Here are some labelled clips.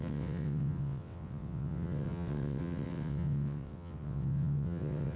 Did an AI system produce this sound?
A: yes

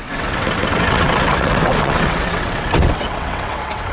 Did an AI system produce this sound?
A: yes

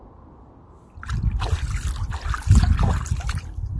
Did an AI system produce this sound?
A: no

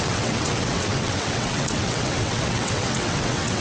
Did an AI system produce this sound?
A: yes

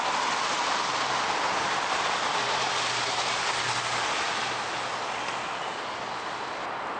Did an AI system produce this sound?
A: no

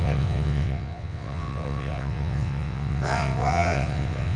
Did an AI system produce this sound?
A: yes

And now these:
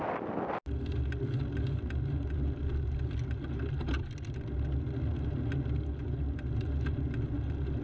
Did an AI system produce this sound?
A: no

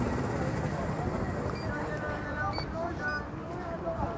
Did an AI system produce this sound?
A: no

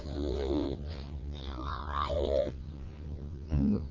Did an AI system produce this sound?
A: yes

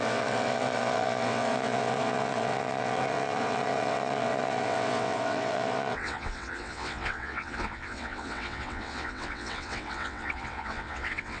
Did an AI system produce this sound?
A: yes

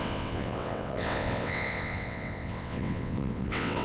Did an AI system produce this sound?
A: yes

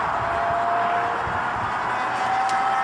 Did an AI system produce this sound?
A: no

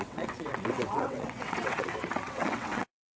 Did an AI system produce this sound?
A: yes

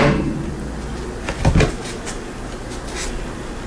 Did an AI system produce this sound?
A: no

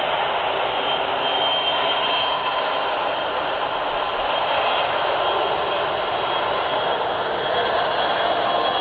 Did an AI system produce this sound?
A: no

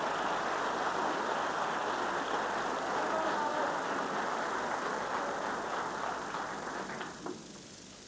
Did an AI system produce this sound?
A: no